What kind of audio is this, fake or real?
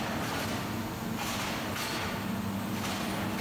real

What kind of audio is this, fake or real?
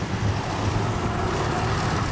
real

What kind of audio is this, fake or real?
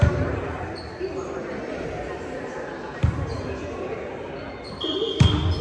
real